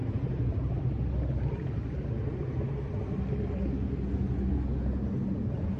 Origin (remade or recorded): recorded